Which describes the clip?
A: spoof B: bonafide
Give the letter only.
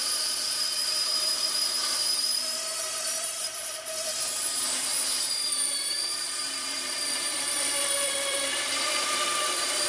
A